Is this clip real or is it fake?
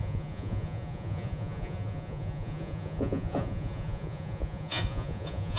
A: fake